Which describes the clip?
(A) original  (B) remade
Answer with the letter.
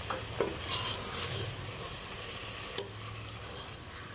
A